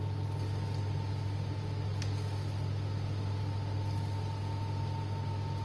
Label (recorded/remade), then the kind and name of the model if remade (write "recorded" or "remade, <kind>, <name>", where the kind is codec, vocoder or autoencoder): recorded